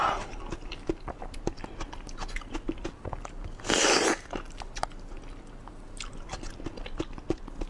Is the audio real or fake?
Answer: real